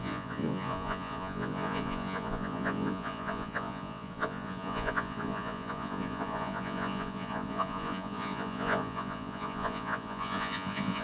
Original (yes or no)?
no